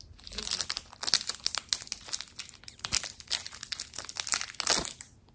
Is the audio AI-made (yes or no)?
no